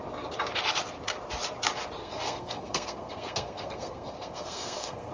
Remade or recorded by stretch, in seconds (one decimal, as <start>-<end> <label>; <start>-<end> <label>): 0.0-2.0 recorded; 2.0-5.1 remade